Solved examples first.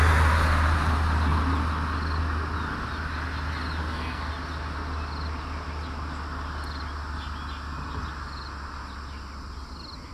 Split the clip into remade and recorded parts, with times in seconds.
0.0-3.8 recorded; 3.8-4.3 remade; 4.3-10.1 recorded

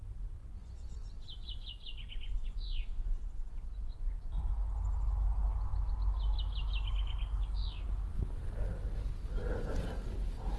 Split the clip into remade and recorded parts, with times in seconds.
0.0-0.4 recorded; 0.4-4.5 remade; 4.5-10.6 recorded